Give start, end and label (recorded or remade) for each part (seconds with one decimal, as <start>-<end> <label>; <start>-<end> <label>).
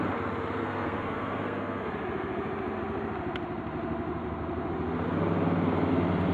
0.0-0.6 recorded; 0.6-1.9 remade; 1.9-6.3 recorded